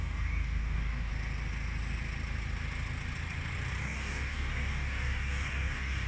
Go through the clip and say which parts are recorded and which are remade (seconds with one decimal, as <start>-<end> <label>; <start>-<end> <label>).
0.0-1.1 remade; 1.1-3.8 recorded; 3.8-6.1 remade